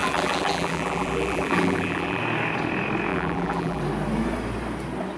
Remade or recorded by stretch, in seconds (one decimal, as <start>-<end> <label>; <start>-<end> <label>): 0.0-2.2 remade; 2.2-3.1 recorded; 3.1-3.8 remade; 3.8-5.2 recorded